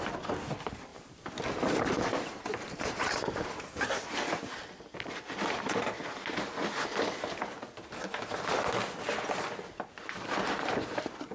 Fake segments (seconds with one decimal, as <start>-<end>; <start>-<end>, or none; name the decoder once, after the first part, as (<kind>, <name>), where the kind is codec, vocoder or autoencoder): 0.9-2.8 (vocoder, BigVGAN v2)